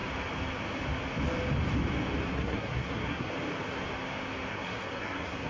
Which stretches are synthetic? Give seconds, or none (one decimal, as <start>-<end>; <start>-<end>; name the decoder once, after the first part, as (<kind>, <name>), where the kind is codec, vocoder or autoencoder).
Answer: 2.3-3.3 (codec, SNAC); 4.5-5.5